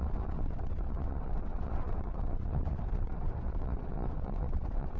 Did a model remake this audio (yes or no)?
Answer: yes